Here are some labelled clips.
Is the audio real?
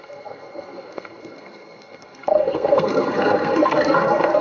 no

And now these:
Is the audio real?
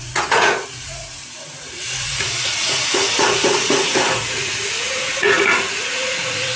no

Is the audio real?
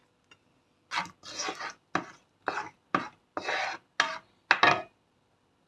yes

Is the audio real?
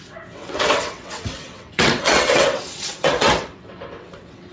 no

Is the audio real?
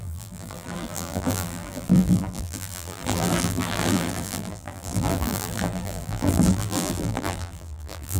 no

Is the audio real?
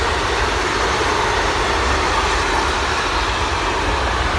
yes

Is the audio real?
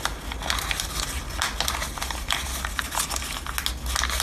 yes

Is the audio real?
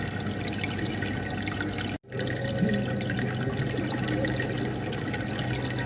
yes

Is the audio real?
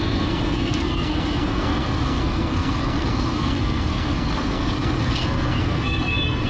no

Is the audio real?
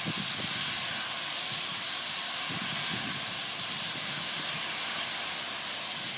yes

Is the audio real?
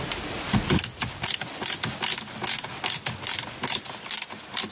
yes